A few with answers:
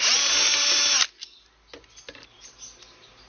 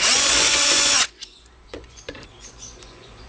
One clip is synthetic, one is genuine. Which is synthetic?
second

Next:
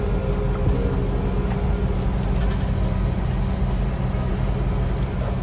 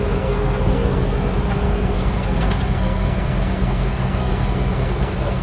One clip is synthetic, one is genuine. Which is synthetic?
second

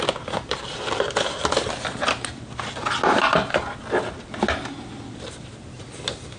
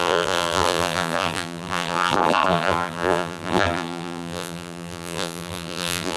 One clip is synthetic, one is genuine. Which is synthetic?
second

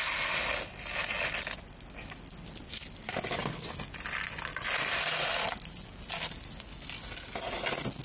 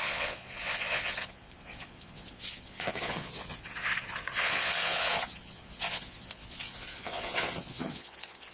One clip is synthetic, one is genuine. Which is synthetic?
second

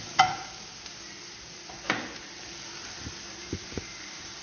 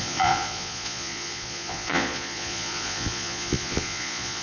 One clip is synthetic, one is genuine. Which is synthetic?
second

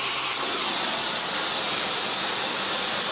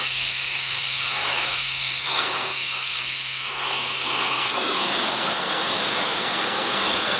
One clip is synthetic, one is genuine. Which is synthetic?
second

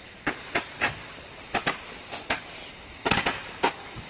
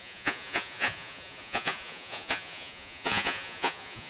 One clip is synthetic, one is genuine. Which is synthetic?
second